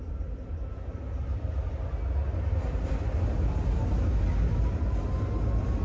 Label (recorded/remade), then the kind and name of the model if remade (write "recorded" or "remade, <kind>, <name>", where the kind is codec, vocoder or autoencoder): recorded